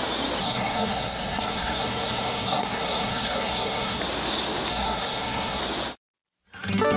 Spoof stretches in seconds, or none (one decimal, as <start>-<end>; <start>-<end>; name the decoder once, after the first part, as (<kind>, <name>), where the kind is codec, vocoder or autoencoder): 0.4-4.0 (codec, SNAC); 4.7-5.6